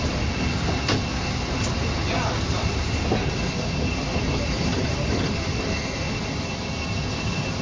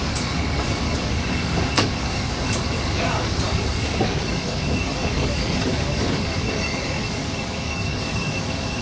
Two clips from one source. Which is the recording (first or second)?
first